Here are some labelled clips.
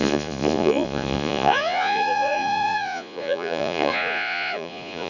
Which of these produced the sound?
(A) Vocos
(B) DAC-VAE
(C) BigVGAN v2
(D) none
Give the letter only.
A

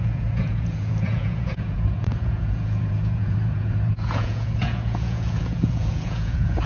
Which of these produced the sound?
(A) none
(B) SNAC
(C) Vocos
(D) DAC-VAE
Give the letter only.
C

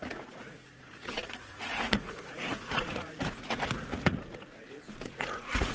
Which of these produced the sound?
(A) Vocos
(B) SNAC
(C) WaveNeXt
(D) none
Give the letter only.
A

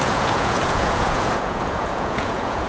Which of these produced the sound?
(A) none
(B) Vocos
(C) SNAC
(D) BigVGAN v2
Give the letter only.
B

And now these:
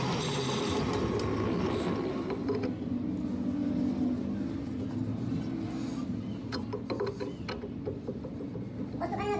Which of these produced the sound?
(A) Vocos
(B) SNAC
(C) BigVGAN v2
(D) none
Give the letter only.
D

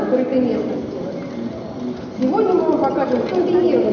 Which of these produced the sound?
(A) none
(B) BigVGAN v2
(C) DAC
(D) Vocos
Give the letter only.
A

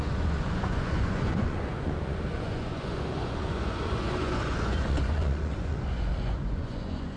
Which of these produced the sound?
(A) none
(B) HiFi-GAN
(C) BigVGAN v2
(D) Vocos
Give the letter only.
D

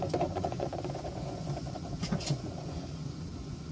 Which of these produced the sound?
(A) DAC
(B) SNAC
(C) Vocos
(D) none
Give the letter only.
C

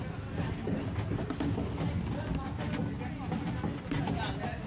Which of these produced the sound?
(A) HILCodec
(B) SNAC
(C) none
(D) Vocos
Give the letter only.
C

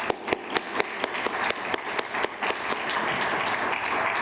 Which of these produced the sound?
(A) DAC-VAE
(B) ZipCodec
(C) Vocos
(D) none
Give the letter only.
D